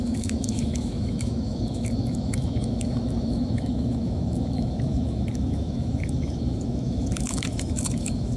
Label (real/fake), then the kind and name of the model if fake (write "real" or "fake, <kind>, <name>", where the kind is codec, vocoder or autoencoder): fake, autoencoder, DAC-VAE